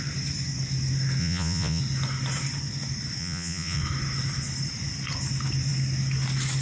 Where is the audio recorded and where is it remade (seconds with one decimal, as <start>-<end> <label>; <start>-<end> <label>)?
0.0-1.2 recorded; 1.2-1.8 remade; 1.8-3.2 recorded; 3.2-3.8 remade; 3.8-6.6 recorded